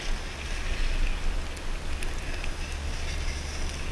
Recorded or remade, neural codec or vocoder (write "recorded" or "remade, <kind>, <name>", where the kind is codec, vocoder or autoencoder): recorded